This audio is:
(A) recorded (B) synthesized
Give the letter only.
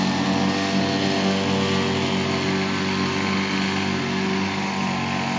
A